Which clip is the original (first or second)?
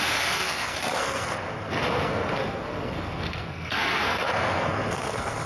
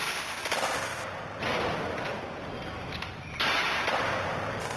second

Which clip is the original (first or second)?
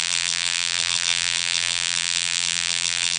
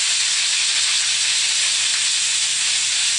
second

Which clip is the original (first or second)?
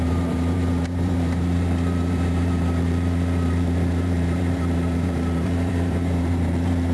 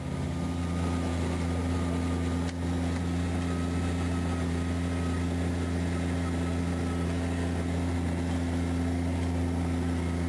second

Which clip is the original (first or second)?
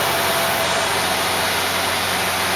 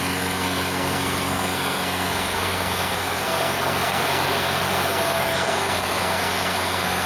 first